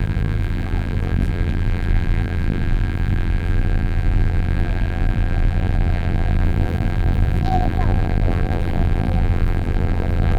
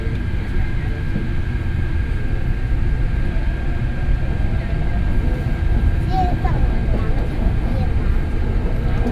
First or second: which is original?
second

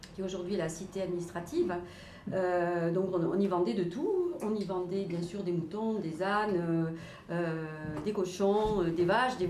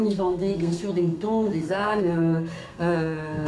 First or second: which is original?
first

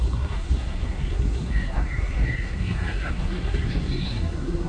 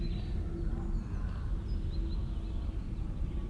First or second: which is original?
second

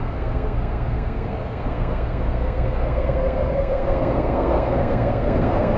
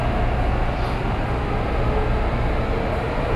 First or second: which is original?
second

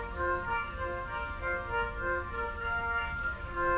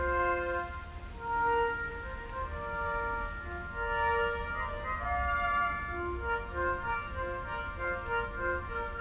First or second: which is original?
second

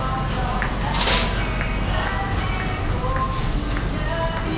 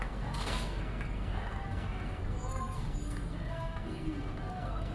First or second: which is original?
first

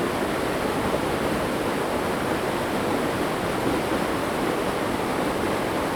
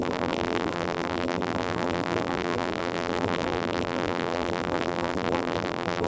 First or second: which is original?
first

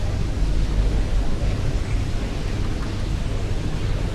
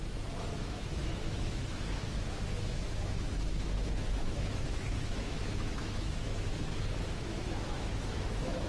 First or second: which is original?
first